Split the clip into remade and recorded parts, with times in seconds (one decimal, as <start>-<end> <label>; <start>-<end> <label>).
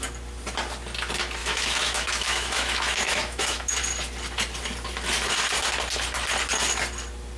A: 0.0-1.4 recorded; 1.4-3.8 remade; 3.8-7.4 recorded